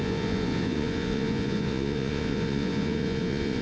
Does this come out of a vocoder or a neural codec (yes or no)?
yes